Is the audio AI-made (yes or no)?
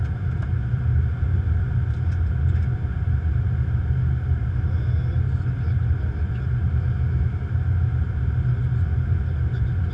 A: no